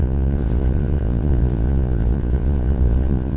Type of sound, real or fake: fake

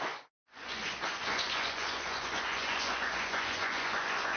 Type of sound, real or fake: fake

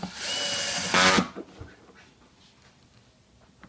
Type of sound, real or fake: real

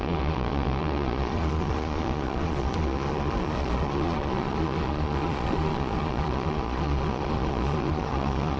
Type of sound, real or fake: fake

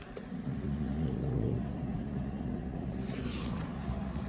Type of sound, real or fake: fake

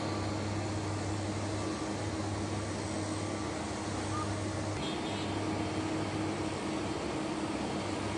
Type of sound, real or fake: real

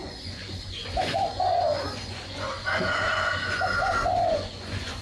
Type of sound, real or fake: fake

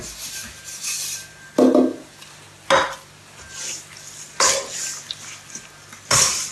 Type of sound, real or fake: real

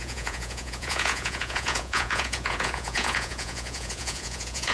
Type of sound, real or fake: fake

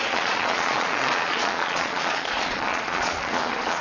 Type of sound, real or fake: fake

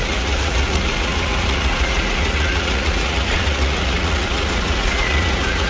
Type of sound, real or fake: fake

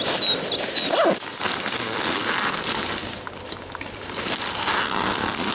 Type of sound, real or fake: real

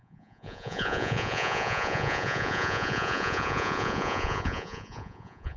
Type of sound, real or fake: fake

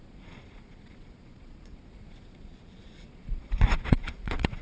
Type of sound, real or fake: fake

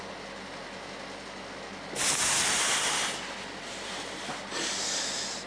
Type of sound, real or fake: real